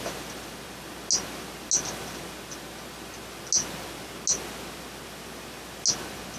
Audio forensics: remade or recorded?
recorded